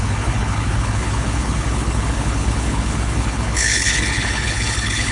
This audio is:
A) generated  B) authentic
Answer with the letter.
A